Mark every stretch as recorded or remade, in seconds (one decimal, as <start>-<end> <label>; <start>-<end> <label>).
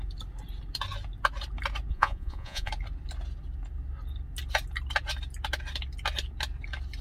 0.0-1.9 recorded; 1.9-2.7 remade; 2.7-7.0 recorded